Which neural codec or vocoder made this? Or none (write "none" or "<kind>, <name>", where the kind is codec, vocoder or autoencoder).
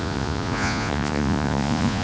vocoder, Vocos